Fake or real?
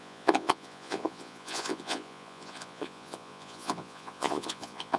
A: fake